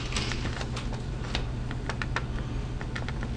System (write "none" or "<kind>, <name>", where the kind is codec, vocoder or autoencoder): none